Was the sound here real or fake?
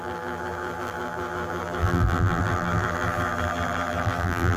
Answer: fake